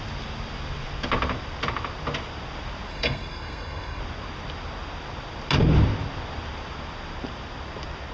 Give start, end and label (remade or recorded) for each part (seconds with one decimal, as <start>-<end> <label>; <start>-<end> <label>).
0.0-2.9 recorded; 2.9-4.0 remade; 4.0-8.1 recorded